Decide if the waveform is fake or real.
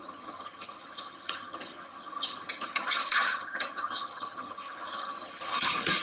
fake